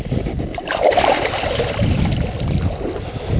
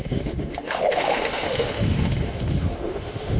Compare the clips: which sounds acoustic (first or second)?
first